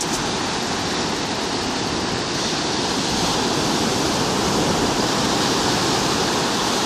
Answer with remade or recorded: recorded